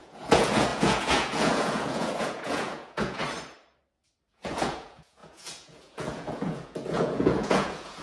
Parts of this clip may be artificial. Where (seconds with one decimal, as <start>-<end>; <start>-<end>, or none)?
0.0-3.2; 4.3-8.0